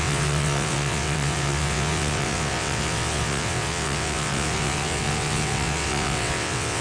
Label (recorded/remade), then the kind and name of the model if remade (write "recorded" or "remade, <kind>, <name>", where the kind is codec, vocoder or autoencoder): remade, vocoder, WaveNeXt